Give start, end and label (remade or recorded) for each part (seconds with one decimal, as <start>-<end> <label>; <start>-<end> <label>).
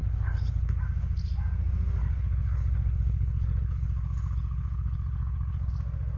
0.0-0.8 remade; 0.8-2.0 recorded; 2.0-5.7 remade; 5.7-6.2 recorded